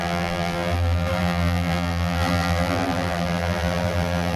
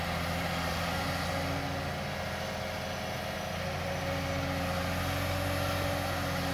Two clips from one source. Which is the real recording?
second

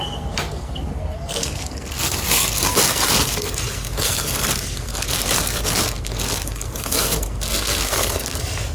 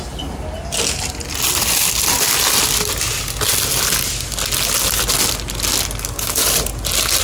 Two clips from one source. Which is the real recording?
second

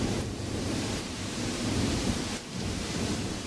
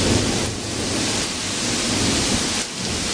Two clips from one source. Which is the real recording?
second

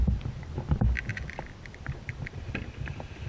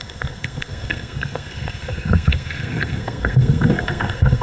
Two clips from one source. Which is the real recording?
first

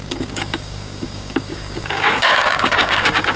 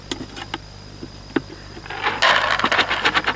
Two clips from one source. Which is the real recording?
second